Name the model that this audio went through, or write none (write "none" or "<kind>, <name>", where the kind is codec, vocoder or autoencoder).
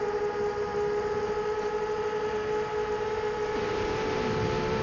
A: none